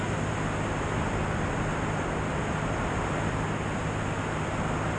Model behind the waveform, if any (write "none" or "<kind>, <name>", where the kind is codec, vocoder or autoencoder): none